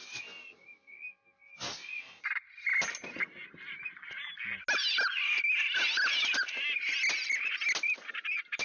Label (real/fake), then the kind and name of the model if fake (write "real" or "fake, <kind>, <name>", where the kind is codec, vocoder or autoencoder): real